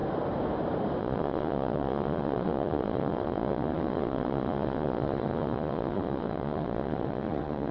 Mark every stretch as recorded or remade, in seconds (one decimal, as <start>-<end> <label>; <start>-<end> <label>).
0.0-1.0 recorded; 1.0-7.7 remade